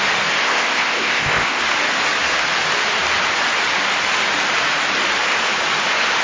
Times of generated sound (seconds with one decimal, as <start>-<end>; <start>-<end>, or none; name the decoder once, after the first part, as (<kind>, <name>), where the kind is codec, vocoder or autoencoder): 0.4-1.6 (codec, ZipCodec)